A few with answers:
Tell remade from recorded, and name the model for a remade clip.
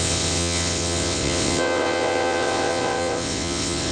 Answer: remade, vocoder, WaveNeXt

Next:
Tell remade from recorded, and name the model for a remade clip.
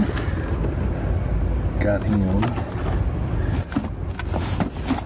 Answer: recorded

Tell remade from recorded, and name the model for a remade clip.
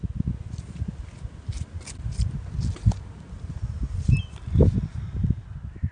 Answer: recorded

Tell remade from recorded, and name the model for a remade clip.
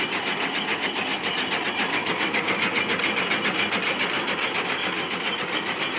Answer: recorded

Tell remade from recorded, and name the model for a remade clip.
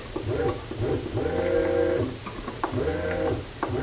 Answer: recorded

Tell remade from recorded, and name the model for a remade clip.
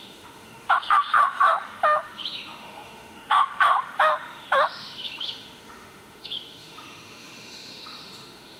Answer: remade, autoencoder, DAC-VAE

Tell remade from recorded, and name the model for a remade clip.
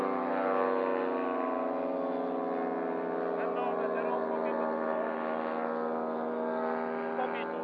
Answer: recorded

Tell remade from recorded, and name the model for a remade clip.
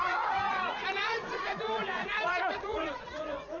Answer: remade, vocoder, Vocos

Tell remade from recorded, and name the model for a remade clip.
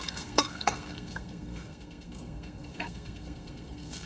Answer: remade, codec, SNAC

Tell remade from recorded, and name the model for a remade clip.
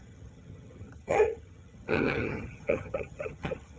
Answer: remade, vocoder, HiFi-GAN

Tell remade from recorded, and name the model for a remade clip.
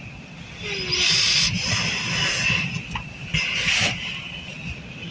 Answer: recorded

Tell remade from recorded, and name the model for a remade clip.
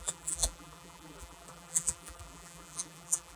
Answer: remade, vocoder, BigVGAN v2